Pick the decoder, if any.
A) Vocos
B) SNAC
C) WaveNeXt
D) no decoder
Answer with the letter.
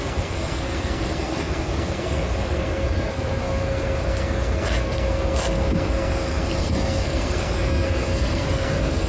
B